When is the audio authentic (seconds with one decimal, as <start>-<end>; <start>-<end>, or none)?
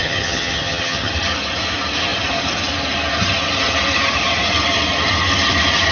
1.1-5.9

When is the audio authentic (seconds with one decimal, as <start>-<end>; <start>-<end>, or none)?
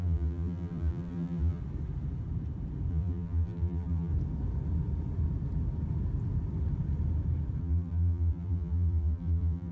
1.6-2.9; 4.1-7.6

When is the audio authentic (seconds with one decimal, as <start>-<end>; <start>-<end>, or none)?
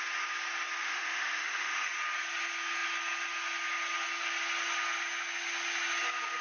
0.0-0.8; 1.9-6.4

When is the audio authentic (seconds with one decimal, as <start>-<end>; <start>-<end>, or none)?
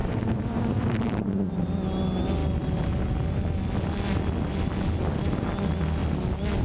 1.3-6.6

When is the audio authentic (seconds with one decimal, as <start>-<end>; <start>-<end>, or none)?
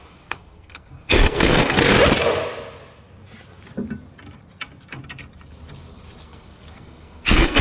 1.9-6.2